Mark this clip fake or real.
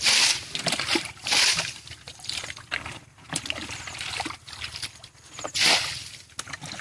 real